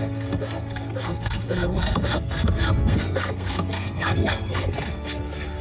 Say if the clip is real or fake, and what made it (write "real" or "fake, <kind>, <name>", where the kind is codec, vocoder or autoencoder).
fake, codec, SNAC